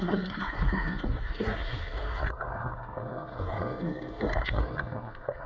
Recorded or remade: remade